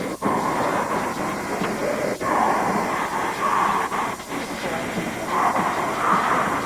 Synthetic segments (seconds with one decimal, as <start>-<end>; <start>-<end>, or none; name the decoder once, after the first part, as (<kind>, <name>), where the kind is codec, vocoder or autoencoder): none